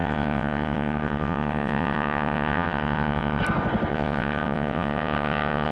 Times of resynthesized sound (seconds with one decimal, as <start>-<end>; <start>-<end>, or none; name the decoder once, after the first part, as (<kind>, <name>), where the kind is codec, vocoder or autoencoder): 0.0-3.4 (vocoder, WaveNeXt); 3.9-5.7